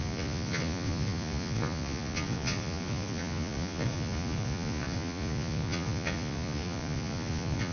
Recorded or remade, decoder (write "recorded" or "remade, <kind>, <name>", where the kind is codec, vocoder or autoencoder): remade, vocoder, Vocos